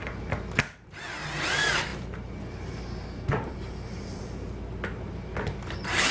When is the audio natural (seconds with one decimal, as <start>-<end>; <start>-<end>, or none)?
0.0-6.1